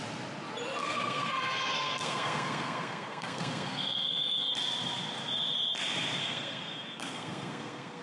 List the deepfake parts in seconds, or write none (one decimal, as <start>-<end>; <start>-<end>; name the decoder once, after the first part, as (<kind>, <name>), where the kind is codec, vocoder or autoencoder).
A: 0.8-4.5 (codec, SNAC); 6.2-8.0